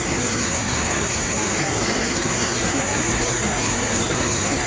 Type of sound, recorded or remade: remade